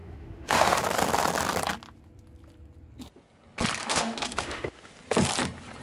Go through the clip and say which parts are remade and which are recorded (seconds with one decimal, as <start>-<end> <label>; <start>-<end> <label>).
0.0-0.8 remade; 0.8-3.8 recorded; 3.8-4.9 remade; 4.9-5.8 recorded